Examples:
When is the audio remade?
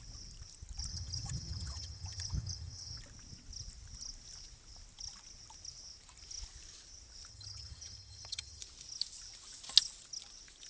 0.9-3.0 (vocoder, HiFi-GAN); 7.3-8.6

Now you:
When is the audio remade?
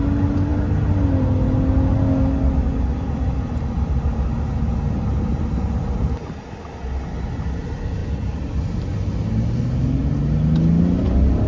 none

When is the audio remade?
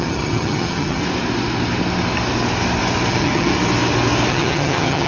0.0-1.0 (vocoder, HiFi-GAN); 3.1-3.5; 4.3-5.1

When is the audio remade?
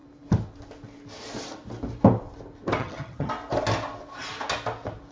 2.8-3.3 (vocoder, HiFi-GAN)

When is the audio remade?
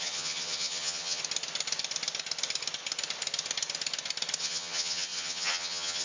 0.0-1.2 (vocoder, HiFi-GAN); 4.4-6.0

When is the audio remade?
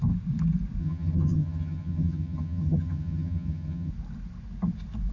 0.8-3.9 (vocoder, HiFi-GAN)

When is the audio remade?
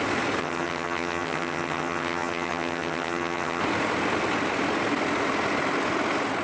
0.4-3.6 (vocoder, HiFi-GAN)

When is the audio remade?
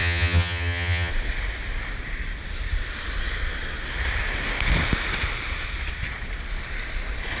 0.0-1.1 (vocoder, HiFi-GAN)